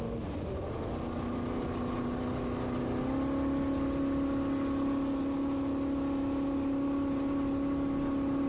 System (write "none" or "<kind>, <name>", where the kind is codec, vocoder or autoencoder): none